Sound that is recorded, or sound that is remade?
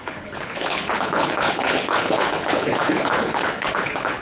remade